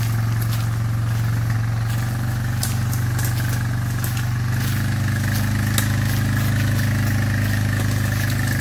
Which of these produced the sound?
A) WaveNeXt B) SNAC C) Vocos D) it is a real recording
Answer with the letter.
D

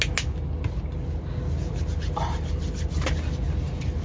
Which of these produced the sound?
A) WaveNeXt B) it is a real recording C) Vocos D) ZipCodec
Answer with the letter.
B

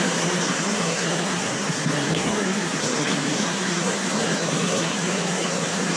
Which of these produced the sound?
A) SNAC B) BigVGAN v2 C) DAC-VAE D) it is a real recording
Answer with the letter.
A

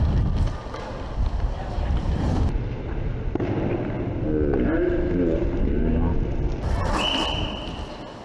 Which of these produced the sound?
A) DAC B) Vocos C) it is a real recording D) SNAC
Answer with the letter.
C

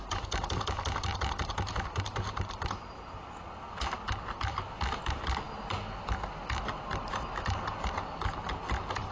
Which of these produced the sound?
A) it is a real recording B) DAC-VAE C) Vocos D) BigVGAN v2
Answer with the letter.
A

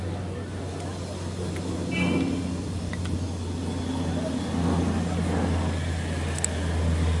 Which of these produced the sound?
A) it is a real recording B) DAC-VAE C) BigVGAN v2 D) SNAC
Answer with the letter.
A